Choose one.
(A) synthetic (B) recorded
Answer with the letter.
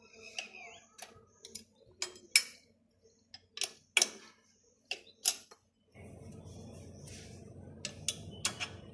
B